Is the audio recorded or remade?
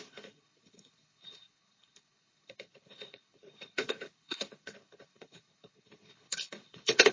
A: remade